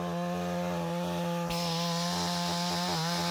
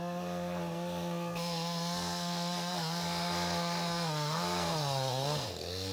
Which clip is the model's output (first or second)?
second